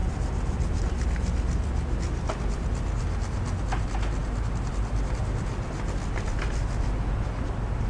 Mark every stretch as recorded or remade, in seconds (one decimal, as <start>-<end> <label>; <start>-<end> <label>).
0.0-7.9 recorded